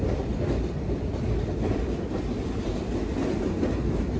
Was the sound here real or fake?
real